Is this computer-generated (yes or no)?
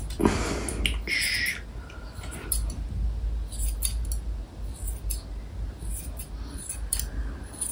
no